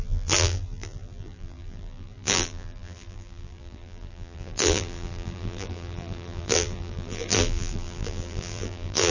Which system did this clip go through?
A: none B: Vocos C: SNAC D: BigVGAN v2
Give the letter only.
D